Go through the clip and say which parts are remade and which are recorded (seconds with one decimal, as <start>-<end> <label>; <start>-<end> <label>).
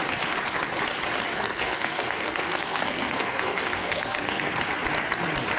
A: 0.0-1.3 recorded; 1.3-4.5 remade; 4.5-5.6 recorded